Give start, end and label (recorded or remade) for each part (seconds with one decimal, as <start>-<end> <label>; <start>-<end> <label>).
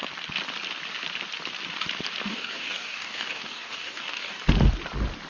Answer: 0.0-2.3 recorded; 2.3-4.4 remade; 4.4-5.3 recorded